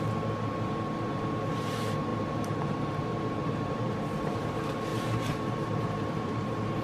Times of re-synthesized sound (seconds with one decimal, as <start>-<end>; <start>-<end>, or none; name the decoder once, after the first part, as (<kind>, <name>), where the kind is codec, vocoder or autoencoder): 2.1-3.0 (vocoder, BigVGAN v2); 3.4-4.0; 4.9-6.8